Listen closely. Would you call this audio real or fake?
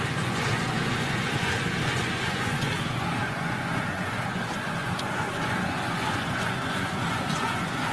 fake